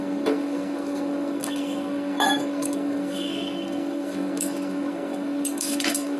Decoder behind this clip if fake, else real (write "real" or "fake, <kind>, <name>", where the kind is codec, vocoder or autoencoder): fake, codec, SNAC